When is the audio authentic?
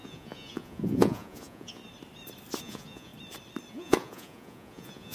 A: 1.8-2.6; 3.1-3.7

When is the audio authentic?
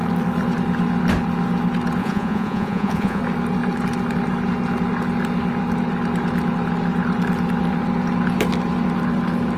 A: 0.0-2.0; 3.2-9.6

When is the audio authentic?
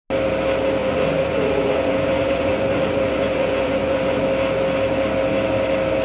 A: 0.0-0.8; 4.2-6.0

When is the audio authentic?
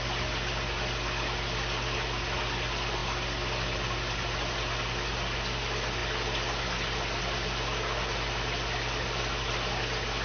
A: 0.0-10.2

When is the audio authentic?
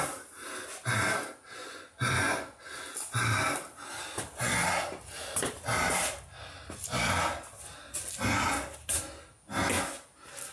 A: 0.0-1.6; 2.6-10.5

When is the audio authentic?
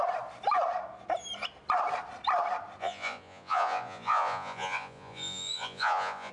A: 0.0-2.8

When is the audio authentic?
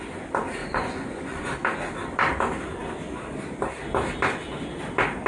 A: 0.0-0.6; 1.5-5.3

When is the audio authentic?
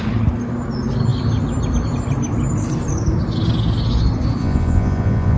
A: 0.0-4.4